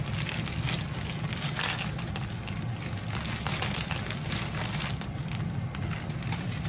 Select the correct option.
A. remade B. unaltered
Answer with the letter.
B